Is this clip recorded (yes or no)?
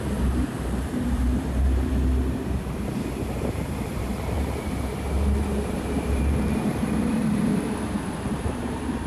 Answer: no